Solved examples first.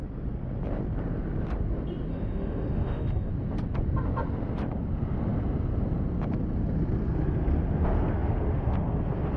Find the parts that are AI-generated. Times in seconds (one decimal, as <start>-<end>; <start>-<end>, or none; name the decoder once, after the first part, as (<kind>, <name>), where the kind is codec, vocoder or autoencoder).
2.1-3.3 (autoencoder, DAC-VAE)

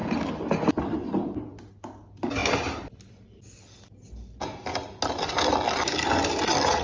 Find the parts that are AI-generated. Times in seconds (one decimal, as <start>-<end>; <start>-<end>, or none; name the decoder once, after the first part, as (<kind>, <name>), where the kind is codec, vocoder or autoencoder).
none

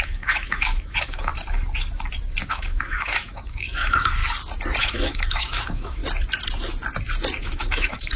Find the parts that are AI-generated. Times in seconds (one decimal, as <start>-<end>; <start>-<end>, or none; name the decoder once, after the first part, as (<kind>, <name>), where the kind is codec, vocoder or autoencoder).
0.0-1.3 (autoencoder, DAC-VAE); 2.5-4.2; 4.8-6.0; 7.4-8.2